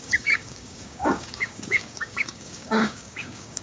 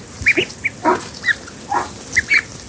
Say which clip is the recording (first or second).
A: second